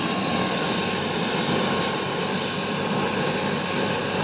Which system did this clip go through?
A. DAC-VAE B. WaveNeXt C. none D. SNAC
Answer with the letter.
C